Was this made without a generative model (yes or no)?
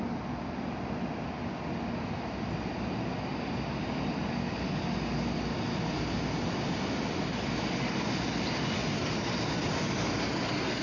yes